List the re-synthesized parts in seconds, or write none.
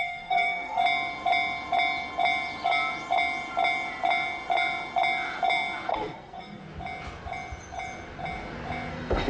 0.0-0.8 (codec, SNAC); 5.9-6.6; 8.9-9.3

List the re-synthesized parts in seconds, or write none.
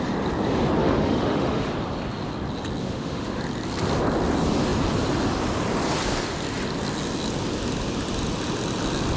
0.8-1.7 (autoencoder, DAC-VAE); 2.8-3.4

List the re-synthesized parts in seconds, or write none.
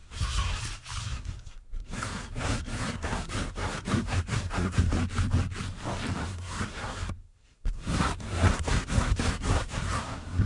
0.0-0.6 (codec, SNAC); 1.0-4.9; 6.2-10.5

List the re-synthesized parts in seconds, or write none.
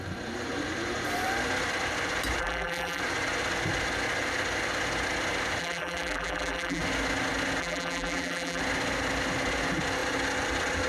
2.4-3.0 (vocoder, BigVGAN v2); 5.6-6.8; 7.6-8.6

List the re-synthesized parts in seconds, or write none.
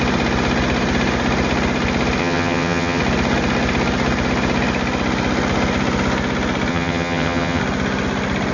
2.2-3.0 (vocoder, HiFi-GAN); 6.7-7.6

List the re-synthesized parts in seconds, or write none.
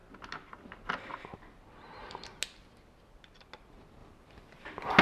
none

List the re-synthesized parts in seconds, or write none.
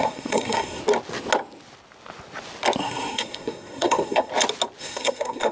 0.0-0.8 (codec, SNAC); 2.8-4.3; 4.8-5.5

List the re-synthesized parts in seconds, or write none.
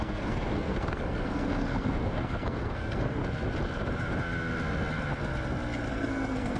0.0-3.2 (codec, SNAC); 5.9-6.6